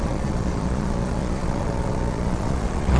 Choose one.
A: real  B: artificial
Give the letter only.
B